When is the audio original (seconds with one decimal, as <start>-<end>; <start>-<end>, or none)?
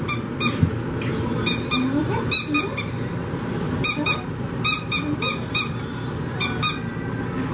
0.0-1.1; 5.6-7.5